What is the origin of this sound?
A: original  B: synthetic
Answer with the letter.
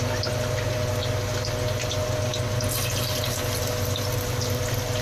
A